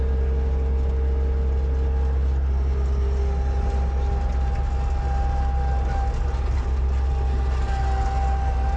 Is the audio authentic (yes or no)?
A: yes